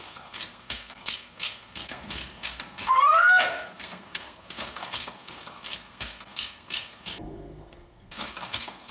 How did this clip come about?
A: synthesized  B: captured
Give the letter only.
A